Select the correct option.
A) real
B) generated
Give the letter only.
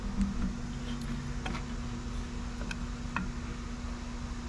A